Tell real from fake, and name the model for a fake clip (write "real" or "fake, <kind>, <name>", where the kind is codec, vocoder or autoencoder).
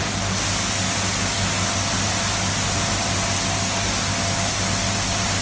real